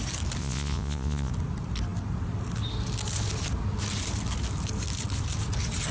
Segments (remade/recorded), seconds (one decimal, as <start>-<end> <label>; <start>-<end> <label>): 0.0-0.4 recorded; 0.4-1.3 remade; 1.3-5.9 recorded